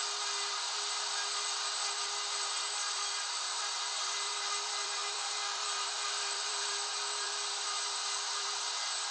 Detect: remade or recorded remade